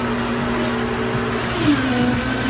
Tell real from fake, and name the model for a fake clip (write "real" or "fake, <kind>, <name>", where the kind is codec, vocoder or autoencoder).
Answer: real